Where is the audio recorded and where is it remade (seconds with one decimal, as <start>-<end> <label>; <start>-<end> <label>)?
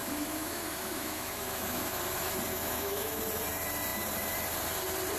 0.0-2.0 remade; 2.0-2.5 recorded; 2.5-3.2 remade; 3.2-5.2 recorded